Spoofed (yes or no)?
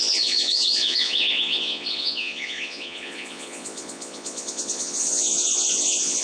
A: yes